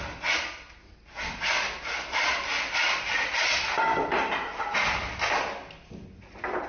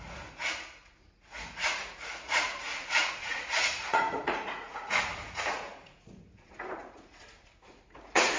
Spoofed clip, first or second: second